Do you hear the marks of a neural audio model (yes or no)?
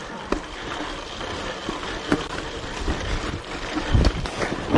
no